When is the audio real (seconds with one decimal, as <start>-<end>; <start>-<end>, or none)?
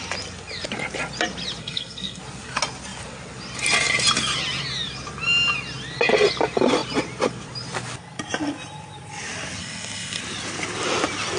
0.0-1.6; 2.2-9.6; 10.2-11.4